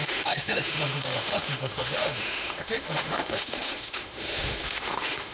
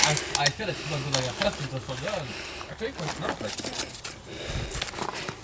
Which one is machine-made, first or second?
first